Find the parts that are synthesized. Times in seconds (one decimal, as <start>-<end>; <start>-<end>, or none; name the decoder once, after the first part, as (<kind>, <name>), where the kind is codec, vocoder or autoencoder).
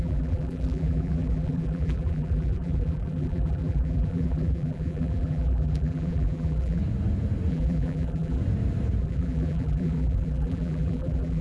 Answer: 0.0-6.8 (vocoder, BigVGAN v2); 7.5-8.4; 9.0-11.4